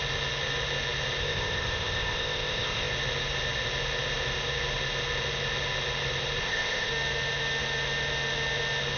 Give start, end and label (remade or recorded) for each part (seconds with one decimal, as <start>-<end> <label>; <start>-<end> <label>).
0.0-1.2 recorded; 1.2-2.9 remade; 2.9-6.4 recorded; 6.4-6.9 remade; 6.9-9.0 recorded